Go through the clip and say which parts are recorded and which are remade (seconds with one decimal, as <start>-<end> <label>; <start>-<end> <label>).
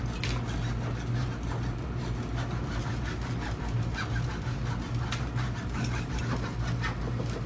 0.0-1.2 recorded; 1.2-2.0 remade; 2.0-2.8 recorded; 2.8-6.2 remade; 6.2-7.5 recorded